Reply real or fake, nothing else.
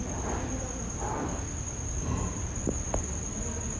real